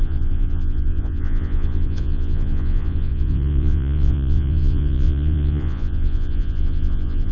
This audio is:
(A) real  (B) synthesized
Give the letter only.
B